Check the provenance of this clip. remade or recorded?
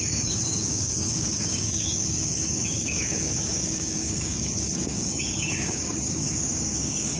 remade